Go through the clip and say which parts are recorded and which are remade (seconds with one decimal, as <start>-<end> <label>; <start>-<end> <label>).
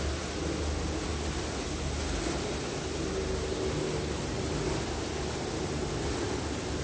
0.0-6.8 recorded